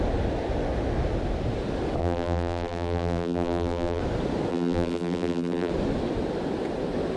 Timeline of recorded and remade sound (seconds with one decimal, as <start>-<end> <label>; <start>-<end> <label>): 0.0-2.0 recorded; 2.0-4.0 remade; 4.0-4.5 recorded; 4.5-5.7 remade; 5.7-7.2 recorded